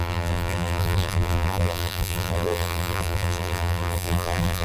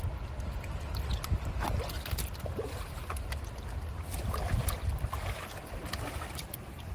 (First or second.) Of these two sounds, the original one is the second